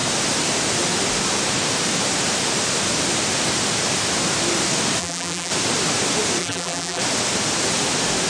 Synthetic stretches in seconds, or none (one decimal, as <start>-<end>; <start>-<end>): 5.0-5.5; 6.4-7.0